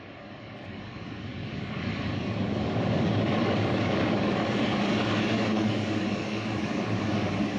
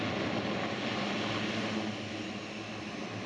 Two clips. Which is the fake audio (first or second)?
first